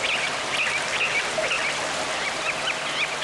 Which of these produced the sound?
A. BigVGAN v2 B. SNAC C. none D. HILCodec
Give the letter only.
C